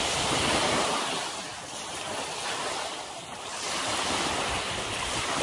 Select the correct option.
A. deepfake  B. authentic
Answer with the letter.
B